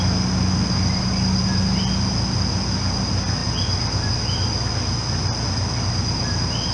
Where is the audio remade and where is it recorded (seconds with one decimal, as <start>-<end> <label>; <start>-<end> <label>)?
0.0-6.7 recorded